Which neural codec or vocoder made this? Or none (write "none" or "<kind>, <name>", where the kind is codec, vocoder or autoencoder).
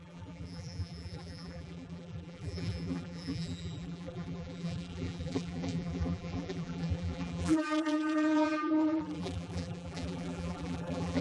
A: vocoder, BigVGAN v2